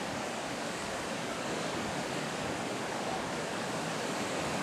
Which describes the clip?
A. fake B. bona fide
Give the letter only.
A